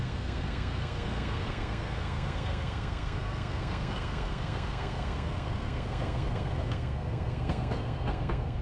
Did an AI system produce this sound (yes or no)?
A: yes